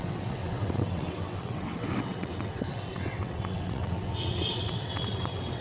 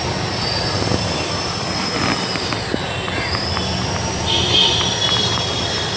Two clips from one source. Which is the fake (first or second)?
first